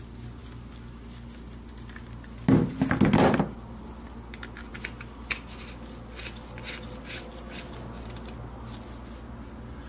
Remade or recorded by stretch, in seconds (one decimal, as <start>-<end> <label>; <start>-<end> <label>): 0.0-9.9 recorded

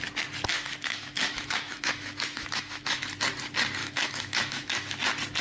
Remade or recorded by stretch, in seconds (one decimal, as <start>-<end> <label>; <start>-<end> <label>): 0.0-0.5 recorded; 0.5-3.0 remade; 3.0-3.8 recorded; 3.8-5.0 remade; 5.0-5.4 recorded